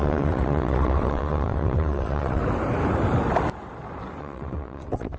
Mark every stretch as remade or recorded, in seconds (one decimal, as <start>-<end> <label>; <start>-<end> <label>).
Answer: 0.0-2.4 remade; 2.4-4.2 recorded; 4.2-5.2 remade

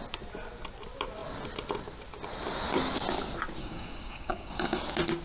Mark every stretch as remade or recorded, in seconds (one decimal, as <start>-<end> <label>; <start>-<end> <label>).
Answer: 0.0-3.6 recorded; 3.6-4.8 remade; 4.8-5.2 recorded

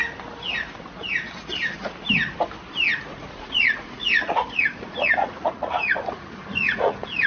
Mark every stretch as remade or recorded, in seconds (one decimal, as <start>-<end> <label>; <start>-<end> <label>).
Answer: 0.0-3.1 recorded; 3.1-7.3 remade

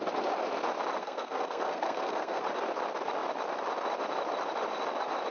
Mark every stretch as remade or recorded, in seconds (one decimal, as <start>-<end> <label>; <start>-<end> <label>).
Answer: 0.0-1.0 recorded; 1.0-2.4 remade; 2.4-5.3 recorded

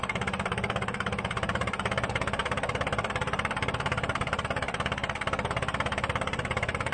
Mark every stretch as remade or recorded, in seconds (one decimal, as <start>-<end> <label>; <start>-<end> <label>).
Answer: 0.0-6.9 remade

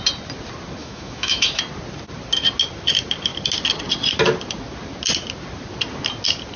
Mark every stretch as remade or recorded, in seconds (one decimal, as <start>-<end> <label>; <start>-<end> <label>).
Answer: 0.0-0.8 recorded; 0.8-1.6 remade; 1.6-6.6 recorded

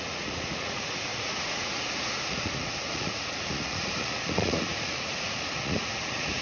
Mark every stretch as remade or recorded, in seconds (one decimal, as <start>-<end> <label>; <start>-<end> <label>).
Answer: 0.0-6.4 remade

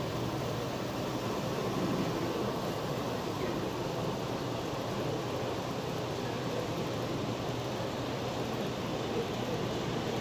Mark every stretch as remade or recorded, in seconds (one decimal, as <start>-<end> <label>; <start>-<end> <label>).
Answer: 0.0-10.2 remade